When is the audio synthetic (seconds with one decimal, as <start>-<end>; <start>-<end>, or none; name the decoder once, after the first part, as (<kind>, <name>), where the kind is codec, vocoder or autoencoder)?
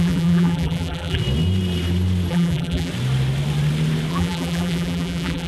0.0-1.2 (vocoder, BigVGAN v2); 2.3-2.9; 4.1-5.5